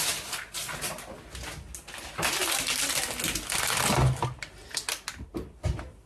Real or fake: real